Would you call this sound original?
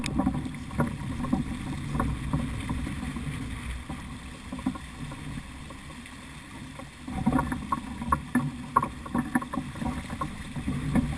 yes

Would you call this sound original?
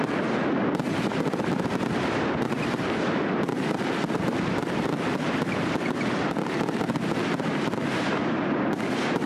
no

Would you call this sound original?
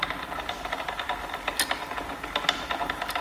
yes